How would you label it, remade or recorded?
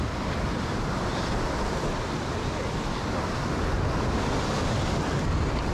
recorded